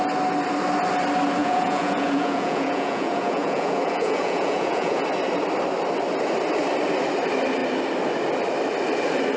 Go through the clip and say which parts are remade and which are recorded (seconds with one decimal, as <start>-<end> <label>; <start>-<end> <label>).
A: 0.0-1.4 recorded; 1.4-5.0 remade; 5.0-9.4 recorded